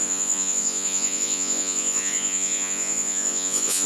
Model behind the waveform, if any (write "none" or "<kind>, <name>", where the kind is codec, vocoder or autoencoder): vocoder, Vocos